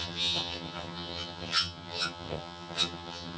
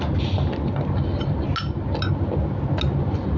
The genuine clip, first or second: second